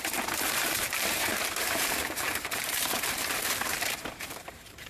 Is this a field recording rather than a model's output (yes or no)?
no